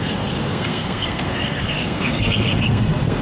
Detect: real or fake fake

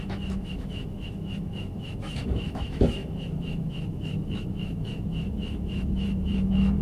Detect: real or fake fake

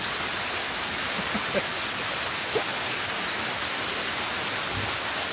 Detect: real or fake real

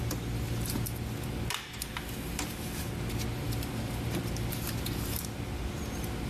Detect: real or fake real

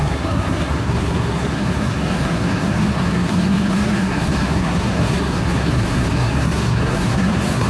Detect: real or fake fake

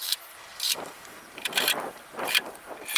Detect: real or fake fake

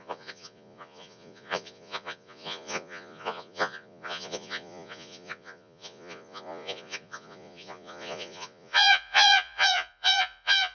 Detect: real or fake fake